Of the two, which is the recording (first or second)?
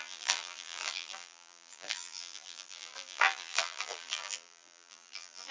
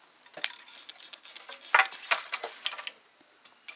second